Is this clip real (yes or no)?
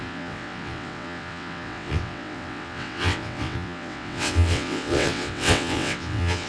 no